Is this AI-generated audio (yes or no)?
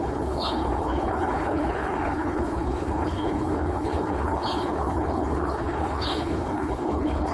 yes